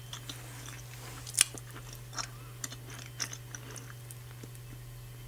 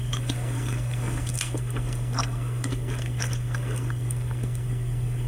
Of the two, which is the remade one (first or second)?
second